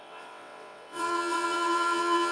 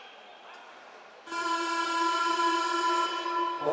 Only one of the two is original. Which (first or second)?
second